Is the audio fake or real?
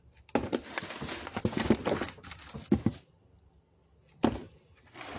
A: real